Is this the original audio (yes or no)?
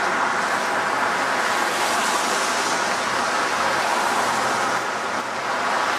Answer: yes